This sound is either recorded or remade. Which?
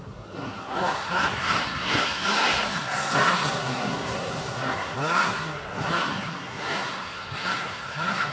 remade